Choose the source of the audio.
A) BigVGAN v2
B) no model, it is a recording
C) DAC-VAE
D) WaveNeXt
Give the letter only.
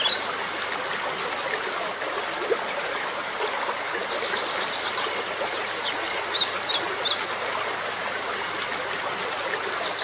B